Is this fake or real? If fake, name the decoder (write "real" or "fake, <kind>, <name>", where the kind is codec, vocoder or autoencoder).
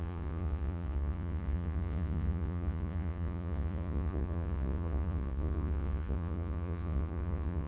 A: fake, vocoder, Vocos